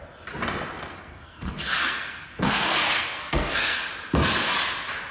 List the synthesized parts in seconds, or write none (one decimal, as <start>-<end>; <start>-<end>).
0.9-3.8